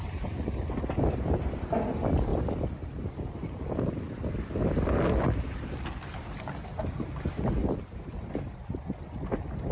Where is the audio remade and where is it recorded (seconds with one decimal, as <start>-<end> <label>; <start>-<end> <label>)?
0.0-9.7 recorded